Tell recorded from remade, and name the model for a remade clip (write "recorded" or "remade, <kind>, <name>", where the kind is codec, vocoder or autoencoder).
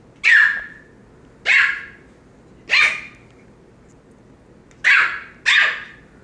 recorded